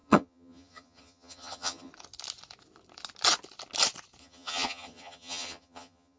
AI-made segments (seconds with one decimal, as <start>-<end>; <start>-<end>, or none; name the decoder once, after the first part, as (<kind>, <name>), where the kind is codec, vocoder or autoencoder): 0.0-1.9 (vocoder, HiFi-GAN); 4.2-6.2